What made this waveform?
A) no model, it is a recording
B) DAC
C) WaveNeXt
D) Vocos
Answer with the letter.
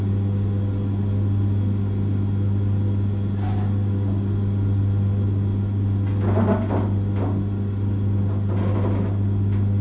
A